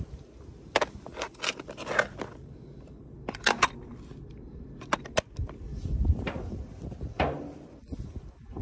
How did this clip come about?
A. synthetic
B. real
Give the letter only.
B